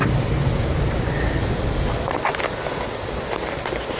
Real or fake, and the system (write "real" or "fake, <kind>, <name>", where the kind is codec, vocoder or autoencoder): real